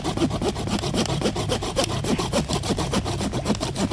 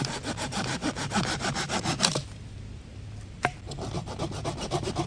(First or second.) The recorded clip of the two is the first